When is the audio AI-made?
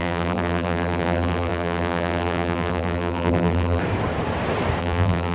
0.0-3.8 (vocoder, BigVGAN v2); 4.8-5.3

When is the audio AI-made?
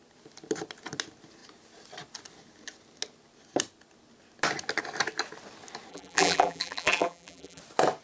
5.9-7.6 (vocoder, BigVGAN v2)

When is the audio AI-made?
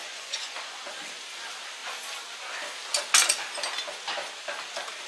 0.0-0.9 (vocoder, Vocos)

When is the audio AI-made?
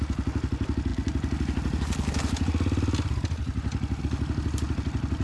none